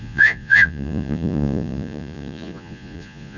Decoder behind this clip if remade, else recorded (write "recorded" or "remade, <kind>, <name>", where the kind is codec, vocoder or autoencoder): remade, vocoder, Vocos